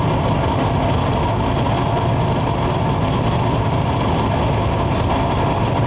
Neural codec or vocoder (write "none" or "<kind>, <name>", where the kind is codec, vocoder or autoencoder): none